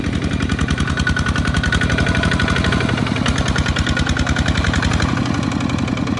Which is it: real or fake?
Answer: real